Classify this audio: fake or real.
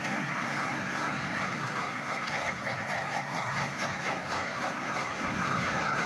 fake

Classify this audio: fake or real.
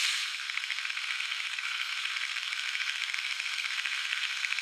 fake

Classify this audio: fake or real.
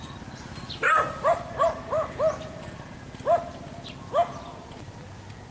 real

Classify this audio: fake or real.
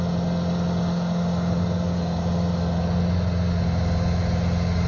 real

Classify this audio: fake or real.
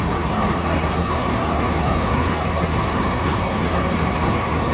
fake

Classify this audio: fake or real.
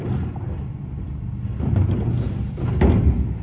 real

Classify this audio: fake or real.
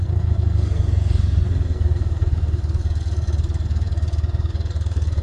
fake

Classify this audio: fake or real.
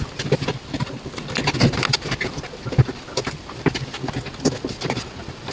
real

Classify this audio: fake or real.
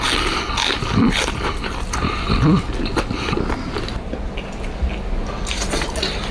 real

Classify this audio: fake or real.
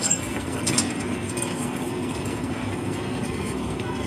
fake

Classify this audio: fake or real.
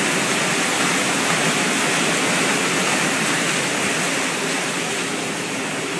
real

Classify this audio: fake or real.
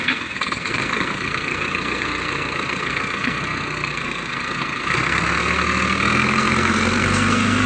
fake